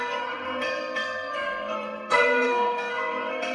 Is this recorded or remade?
remade